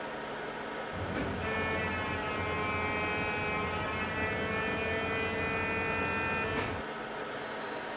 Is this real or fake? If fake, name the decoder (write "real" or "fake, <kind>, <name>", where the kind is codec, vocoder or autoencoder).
real